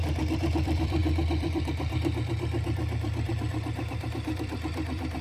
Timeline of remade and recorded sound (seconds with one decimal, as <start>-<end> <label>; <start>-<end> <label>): 0.0-5.2 remade